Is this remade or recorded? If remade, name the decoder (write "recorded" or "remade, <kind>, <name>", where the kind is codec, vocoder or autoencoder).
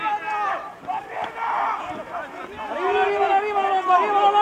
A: recorded